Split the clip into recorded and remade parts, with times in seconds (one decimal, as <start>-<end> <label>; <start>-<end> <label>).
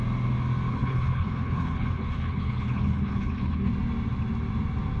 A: 0.0-0.7 recorded; 0.7-3.7 remade; 3.7-5.0 recorded